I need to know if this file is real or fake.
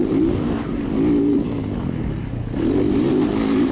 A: real